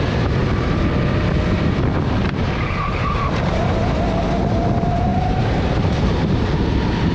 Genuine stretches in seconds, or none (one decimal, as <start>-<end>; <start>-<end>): 0.0-0.4; 0.9-2.2; 3.6-5.1